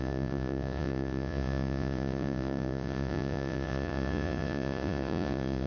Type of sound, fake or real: fake